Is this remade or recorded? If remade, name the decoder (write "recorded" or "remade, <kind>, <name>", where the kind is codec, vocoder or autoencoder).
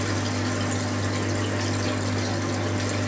recorded